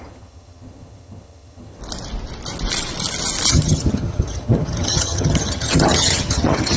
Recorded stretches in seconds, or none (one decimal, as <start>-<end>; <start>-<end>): 1.8-3.5